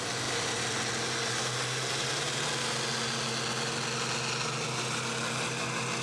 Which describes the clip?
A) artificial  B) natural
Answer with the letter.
B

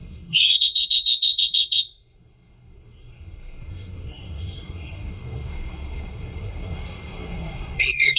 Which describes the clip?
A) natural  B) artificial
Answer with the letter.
B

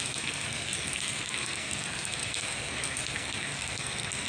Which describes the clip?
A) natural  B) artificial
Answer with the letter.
B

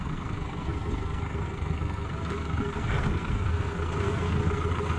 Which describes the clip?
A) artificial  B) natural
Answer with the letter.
A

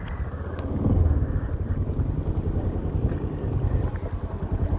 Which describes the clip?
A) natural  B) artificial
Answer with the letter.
A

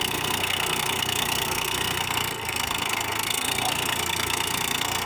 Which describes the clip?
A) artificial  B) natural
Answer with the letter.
A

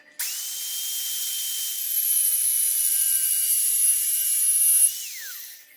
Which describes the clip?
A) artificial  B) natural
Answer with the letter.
B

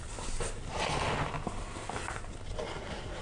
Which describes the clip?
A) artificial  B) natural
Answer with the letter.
B